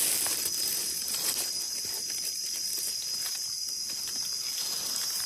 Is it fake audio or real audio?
real